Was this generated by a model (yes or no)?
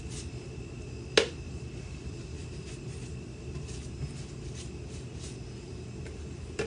no